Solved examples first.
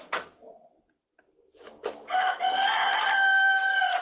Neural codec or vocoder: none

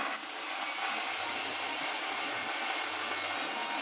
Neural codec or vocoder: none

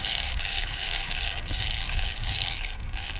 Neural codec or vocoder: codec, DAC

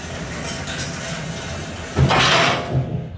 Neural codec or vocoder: none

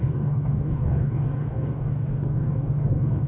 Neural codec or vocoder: codec, DAC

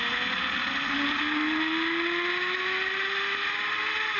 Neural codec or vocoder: none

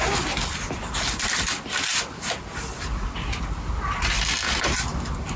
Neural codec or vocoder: none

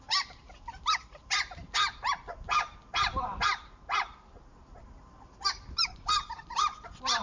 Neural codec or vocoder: none